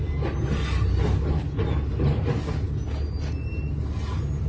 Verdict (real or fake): real